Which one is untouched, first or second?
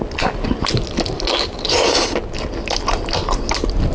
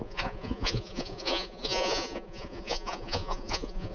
first